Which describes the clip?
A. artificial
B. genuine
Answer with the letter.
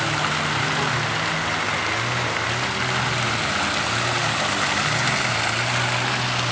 B